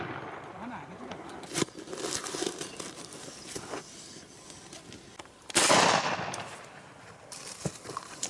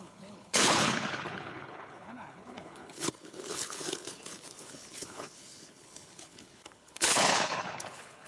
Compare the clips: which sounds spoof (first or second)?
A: second